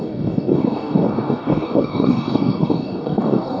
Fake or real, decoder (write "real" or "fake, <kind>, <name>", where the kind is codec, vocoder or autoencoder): fake, codec, DAC